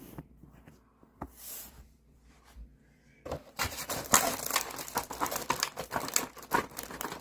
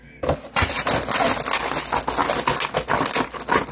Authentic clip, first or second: second